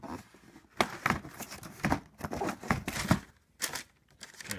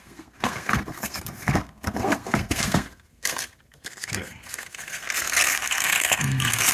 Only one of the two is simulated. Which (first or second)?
second